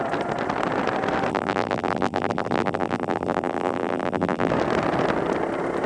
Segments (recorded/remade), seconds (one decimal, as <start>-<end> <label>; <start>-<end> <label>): 0.0-1.3 recorded; 1.3-4.5 remade; 4.5-5.9 recorded